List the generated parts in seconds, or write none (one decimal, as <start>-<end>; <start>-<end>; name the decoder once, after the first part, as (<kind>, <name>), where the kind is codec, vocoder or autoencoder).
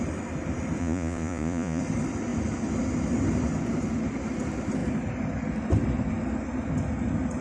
0.8-1.8 (vocoder, Vocos)